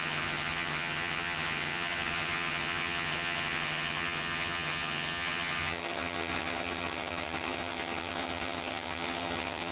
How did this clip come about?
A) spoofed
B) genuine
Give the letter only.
A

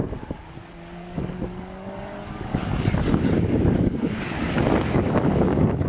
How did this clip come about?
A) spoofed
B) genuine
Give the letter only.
A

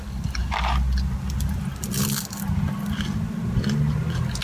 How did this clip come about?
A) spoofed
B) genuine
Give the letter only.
B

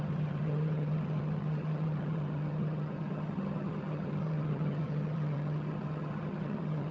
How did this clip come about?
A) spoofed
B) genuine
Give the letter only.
A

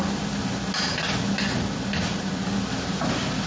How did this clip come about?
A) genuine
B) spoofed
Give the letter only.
A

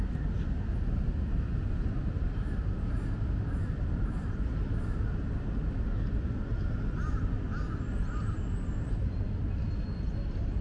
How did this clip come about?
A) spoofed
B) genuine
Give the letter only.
B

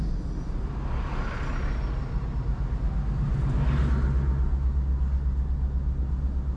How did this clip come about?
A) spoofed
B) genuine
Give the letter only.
B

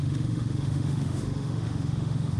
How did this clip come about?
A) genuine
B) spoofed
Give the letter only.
B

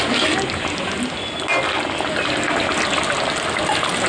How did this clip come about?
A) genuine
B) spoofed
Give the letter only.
A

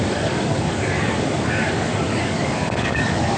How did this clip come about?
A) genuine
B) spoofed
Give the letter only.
B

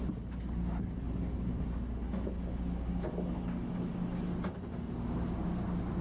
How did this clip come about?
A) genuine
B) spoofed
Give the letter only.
A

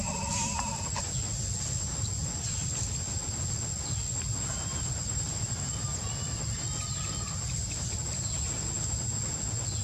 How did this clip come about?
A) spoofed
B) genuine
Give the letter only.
B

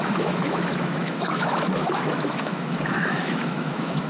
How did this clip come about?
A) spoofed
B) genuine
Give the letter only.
A